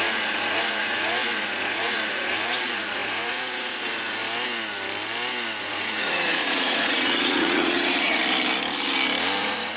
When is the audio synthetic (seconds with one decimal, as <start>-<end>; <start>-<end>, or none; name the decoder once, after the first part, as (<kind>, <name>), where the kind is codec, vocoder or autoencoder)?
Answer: 0.0-4.2 (vocoder, Vocos); 5.6-8.2; 9.4-9.8